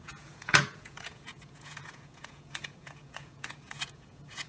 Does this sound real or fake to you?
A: fake